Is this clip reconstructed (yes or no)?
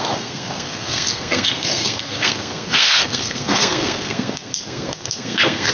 yes